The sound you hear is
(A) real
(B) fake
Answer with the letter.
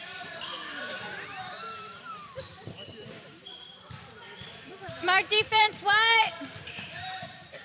B